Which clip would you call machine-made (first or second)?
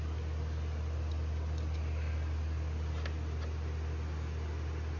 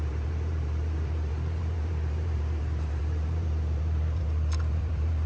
second